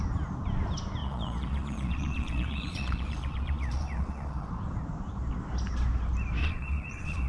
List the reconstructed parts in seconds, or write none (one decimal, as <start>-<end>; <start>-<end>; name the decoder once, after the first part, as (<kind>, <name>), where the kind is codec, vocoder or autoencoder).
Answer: 1.0-4.5 (vocoder, Vocos); 6.4-7.3